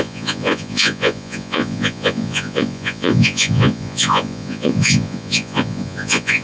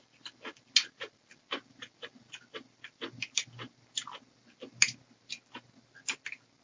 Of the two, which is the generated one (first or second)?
first